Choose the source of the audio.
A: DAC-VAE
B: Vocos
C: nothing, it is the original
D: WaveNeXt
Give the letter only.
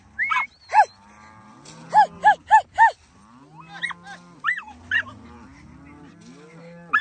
C